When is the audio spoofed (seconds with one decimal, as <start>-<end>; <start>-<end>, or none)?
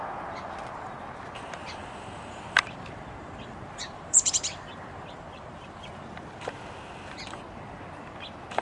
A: 1.8-6.1